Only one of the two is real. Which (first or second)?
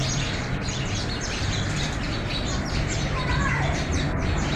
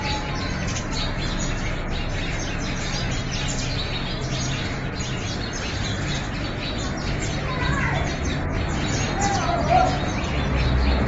second